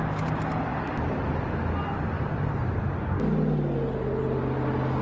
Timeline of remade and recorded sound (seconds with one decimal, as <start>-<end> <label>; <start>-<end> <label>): 0.0-5.0 recorded